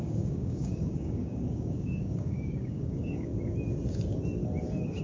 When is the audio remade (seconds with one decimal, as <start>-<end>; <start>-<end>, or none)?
0.0-3.3